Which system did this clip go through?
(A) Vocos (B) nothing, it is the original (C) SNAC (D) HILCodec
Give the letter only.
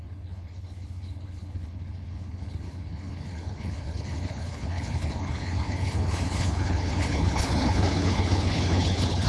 D